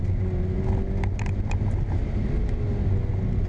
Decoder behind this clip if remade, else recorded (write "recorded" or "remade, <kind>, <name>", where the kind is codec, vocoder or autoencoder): recorded